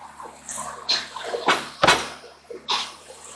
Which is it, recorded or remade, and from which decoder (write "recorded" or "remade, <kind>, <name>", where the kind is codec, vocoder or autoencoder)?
remade, vocoder, BigVGAN v2